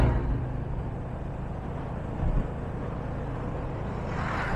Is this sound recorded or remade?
recorded